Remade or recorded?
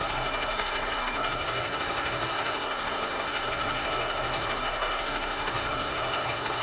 remade